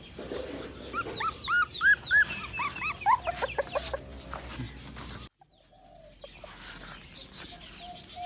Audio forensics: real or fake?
real